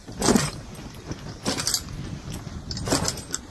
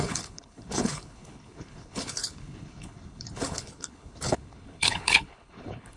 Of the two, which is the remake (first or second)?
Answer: second